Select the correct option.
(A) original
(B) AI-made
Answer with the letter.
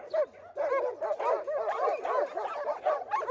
A